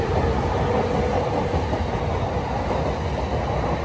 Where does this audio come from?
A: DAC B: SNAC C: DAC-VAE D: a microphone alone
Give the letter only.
D